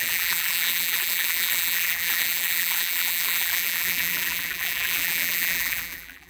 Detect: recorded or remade remade